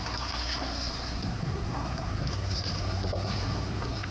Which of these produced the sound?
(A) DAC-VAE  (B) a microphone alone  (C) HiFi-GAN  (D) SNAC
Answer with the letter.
D